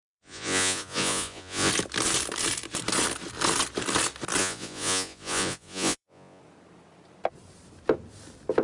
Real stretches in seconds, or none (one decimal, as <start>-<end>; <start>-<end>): 1.7-4.4; 6.4-8.6